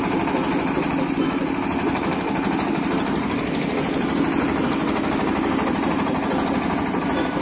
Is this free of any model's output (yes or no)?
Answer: yes